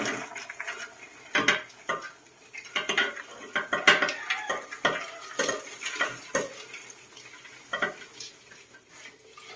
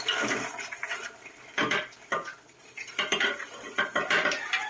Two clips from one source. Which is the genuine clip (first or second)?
first